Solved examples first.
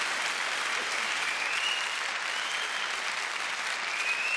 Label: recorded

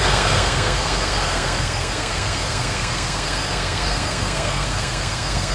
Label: remade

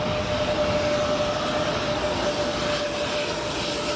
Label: recorded